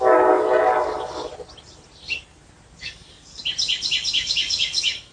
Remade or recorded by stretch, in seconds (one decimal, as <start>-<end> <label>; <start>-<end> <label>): 0.0-1.3 remade; 1.3-2.8 recorded; 2.8-3.4 remade; 3.4-4.1 recorded; 4.1-5.1 remade